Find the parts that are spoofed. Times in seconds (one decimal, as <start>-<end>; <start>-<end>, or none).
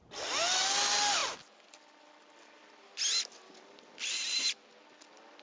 none